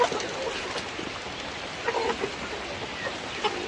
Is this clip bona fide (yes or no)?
yes